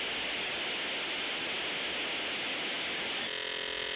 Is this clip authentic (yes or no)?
yes